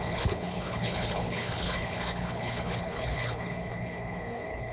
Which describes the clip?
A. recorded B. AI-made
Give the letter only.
B